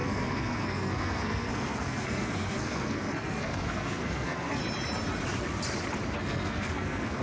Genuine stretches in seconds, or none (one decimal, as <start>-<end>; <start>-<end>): 4.6-6.2